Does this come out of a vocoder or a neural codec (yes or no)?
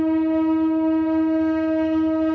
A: no